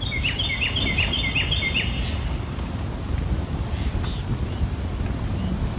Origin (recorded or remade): recorded